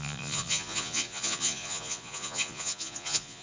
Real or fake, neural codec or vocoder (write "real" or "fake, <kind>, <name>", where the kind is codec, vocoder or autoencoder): fake, vocoder, Vocos